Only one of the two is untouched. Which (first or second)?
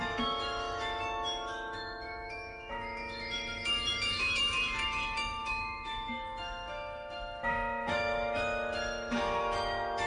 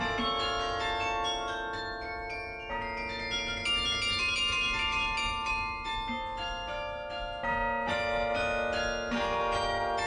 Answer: second